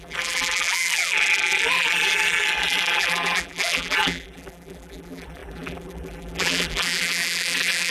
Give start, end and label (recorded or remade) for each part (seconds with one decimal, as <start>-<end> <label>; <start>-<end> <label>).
0.0-7.9 remade